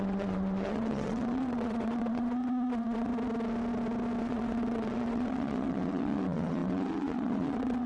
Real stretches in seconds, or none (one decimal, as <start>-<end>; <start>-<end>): 3.1-4.2